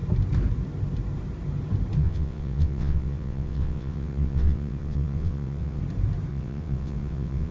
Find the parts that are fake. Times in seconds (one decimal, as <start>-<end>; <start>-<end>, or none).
2.0-5.8; 6.3-7.5